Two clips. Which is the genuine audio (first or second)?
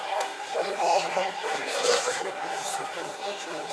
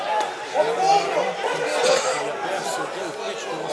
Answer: second